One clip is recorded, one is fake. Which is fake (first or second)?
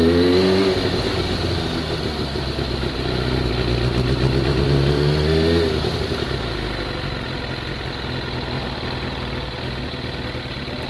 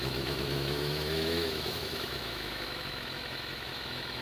second